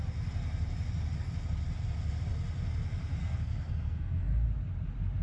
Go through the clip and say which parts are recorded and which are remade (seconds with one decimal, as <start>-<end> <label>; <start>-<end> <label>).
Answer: 0.0-3.2 recorded; 3.2-4.5 remade; 4.5-5.2 recorded